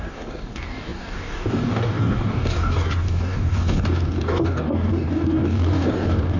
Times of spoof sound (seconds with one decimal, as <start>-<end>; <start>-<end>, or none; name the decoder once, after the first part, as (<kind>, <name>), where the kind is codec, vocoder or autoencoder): 0.0-6.4 (codec, DAC)